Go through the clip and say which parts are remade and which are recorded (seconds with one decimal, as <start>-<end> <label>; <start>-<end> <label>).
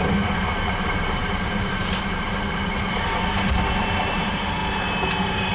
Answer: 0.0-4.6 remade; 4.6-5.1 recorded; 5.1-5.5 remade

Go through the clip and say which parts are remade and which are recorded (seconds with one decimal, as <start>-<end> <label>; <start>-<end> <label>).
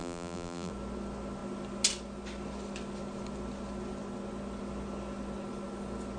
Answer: 0.0-0.7 remade; 0.7-6.2 recorded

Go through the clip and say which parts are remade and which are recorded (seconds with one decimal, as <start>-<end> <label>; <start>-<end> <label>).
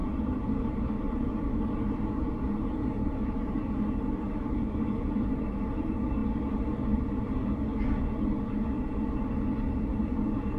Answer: 0.0-6.2 remade; 6.2-7.2 recorded; 7.2-7.7 remade; 7.7-9.8 recorded; 9.8-10.6 remade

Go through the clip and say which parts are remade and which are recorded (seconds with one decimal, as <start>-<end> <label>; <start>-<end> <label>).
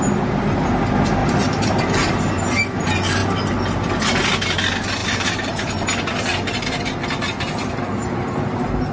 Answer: 0.0-1.2 recorded; 1.2-2.1 remade; 2.1-5.0 recorded; 5.0-5.7 remade; 5.7-6.3 recorded; 6.3-8.9 remade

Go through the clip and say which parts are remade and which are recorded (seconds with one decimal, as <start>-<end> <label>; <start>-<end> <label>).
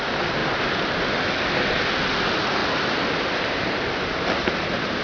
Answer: 0.0-0.4 recorded; 0.4-1.0 remade; 1.0-2.6 recorded; 2.6-5.0 remade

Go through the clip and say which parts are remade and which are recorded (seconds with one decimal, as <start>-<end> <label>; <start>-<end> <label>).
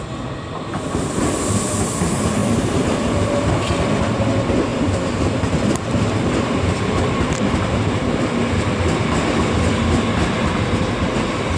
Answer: 0.0-11.6 recorded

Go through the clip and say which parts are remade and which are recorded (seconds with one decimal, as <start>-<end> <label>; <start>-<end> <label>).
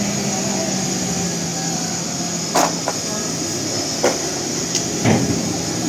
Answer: 0.0-5.9 recorded